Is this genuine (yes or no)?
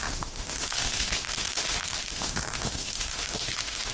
no